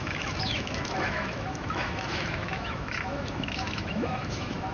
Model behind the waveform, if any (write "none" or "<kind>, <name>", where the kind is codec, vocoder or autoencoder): autoencoder, DAC-VAE